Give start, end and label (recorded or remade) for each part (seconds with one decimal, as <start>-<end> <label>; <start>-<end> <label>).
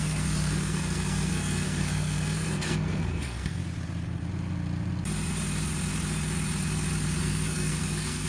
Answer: 0.0-3.6 remade; 3.6-7.2 recorded; 7.2-8.3 remade